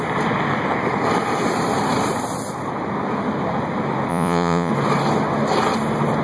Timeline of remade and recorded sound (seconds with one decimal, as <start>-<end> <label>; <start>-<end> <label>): 0.0-4.1 recorded; 4.1-4.7 remade; 4.7-6.2 recorded